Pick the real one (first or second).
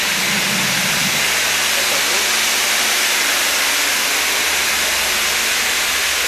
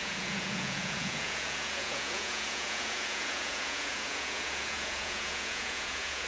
first